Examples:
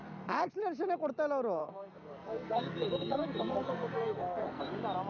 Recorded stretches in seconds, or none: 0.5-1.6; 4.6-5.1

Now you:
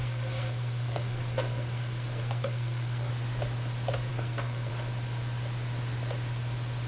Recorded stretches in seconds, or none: 3.1-4.1; 4.7-6.9

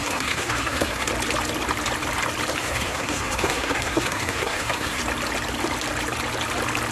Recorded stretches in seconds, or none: 1.1-2.6; 5.0-6.9